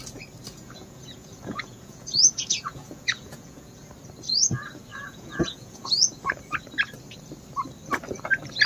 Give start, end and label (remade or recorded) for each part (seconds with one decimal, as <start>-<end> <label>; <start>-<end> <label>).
0.0-0.5 recorded; 0.5-3.9 remade; 3.9-4.9 recorded; 4.9-6.4 remade; 6.4-8.7 recorded